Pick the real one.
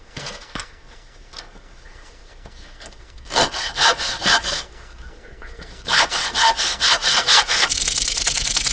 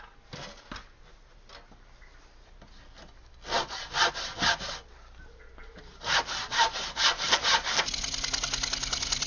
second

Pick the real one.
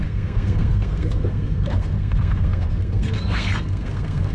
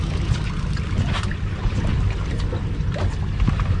second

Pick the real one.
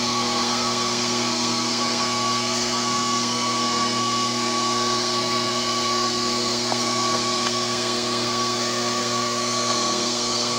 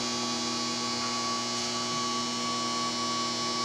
second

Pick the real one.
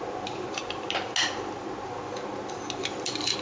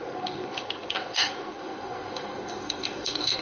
first